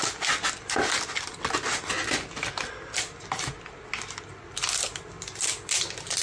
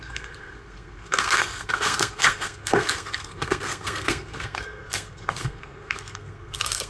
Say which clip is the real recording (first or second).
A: first